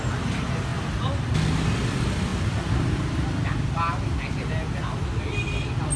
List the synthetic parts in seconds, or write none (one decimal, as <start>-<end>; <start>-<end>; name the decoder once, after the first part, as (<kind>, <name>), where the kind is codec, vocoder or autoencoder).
none